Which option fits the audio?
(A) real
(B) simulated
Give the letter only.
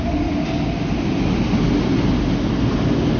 A